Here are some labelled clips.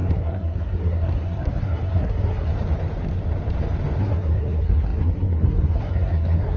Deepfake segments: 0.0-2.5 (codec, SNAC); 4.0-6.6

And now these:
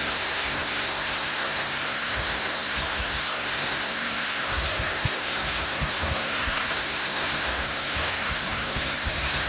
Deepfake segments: 0.0-9.5 (codec, SNAC)

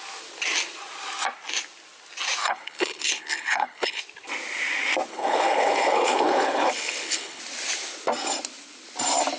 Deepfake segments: 2.4-4.0 (codec, HILCodec); 5.1-7.4

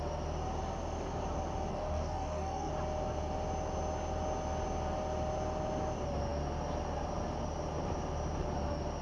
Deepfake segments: 1.7-2.7 (codec, DAC)

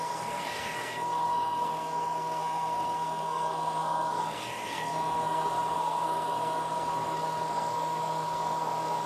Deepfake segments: 0.0-9.1 (codec, SNAC)